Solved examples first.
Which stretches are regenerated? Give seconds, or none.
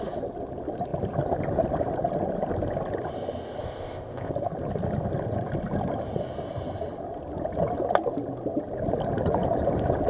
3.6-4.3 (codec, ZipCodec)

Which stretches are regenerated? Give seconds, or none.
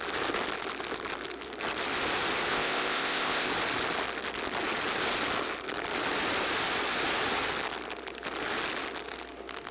2.5-3.5 (codec, ZipCodec)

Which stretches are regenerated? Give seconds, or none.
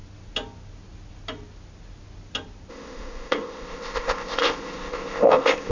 2.7-5.7 (codec, ZipCodec)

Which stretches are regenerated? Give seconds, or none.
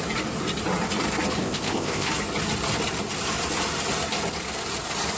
1.4-2.1 (codec, ZipCodec)